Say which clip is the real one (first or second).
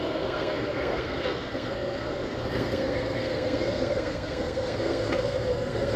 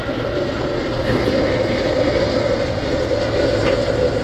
second